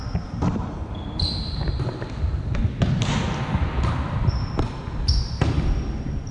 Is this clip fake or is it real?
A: real